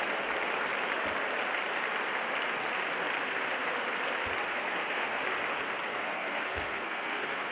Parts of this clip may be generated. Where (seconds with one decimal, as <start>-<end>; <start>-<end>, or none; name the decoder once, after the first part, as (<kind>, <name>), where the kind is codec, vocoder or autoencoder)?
4.5-5.2 (codec, SNAC); 5.9-7.5